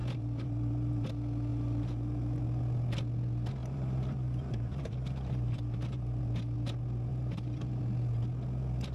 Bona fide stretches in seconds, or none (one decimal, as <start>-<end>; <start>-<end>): 1.1-1.5; 2.4-3.6; 6.2-7.1; 7.8-8.9